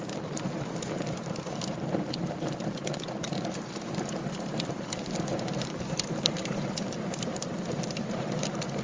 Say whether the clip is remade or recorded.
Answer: remade